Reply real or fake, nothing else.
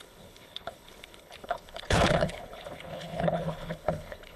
fake